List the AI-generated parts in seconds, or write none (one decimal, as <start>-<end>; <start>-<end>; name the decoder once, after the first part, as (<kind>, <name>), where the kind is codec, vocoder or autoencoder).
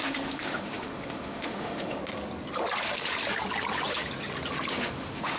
0.0-2.0 (autoencoder, DAC-VAE); 4.7-5.4